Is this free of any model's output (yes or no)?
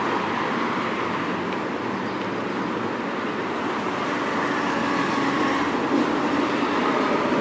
yes